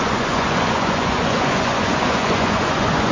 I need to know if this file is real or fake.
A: fake